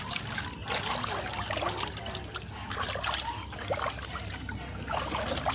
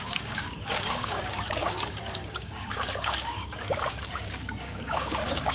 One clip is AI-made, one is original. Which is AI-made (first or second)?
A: second